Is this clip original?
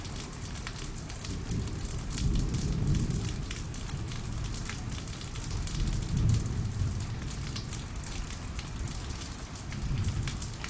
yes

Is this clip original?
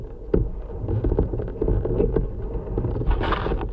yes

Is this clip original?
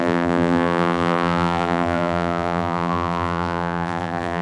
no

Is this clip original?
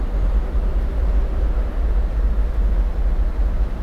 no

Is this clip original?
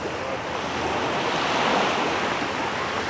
yes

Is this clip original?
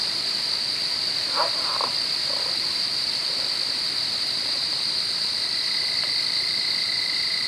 yes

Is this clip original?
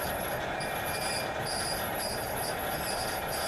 no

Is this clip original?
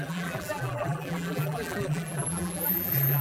no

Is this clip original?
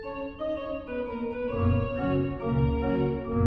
yes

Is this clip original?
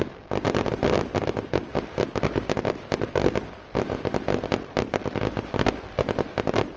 no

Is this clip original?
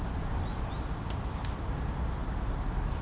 yes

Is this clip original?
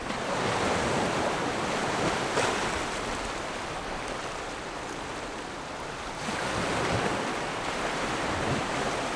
no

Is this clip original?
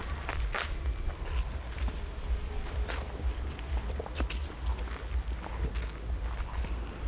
yes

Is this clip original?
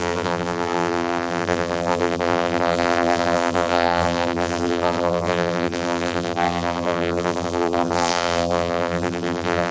no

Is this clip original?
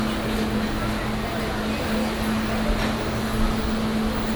yes